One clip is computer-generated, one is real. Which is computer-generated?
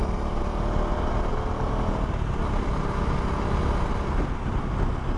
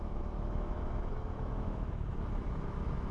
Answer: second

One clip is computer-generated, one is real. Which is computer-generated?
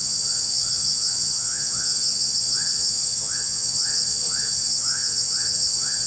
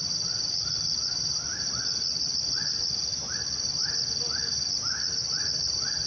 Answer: first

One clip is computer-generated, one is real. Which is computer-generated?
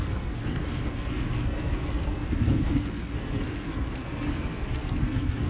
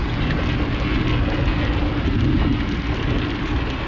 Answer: first